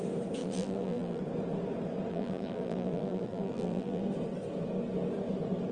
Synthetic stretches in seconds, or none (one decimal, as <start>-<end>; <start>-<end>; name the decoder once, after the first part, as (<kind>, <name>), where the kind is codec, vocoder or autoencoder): 0.4-1.2 (vocoder, BigVGAN v2); 2.1-4.0